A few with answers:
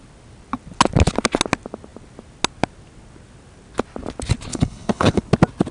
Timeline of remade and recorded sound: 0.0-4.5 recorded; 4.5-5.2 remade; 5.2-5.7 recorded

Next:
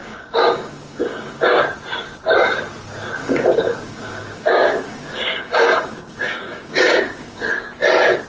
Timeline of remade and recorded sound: 0.0-1.6 remade; 1.6-3.2 recorded; 3.2-7.5 remade; 7.5-8.3 recorded

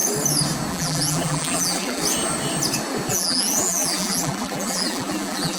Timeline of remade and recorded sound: 0.0-0.7 recorded; 0.7-2.0 remade; 2.0-3.1 recorded; 3.1-5.6 remade